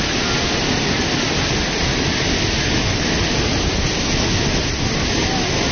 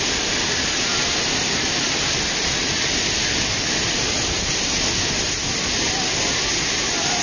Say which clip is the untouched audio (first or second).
first